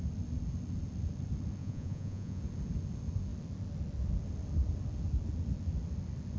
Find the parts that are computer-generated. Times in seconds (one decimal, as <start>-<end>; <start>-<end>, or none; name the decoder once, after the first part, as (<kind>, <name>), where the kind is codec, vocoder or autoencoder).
1.6-2.4 (vocoder, Vocos)